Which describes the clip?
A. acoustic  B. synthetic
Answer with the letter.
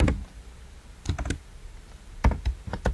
A